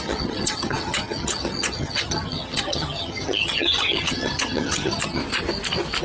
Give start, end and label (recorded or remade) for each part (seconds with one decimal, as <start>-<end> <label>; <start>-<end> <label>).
0.0-5.2 remade; 5.2-6.0 recorded